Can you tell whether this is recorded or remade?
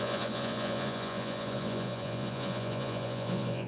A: remade